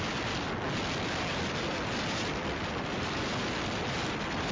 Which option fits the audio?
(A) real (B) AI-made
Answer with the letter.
A